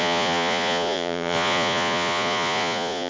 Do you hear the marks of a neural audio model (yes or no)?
yes